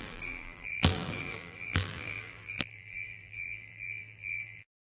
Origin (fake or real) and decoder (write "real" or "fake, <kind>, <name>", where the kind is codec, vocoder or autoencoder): fake, vocoder, BigVGAN v2